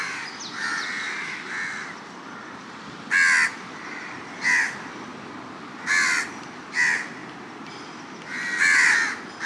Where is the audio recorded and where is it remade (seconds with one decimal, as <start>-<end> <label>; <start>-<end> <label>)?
0.0-9.5 recorded